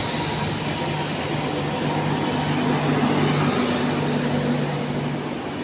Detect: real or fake real